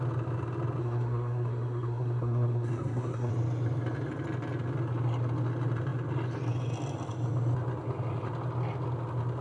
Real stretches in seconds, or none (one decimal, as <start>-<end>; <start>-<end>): 0.0-0.8; 3.3-9.4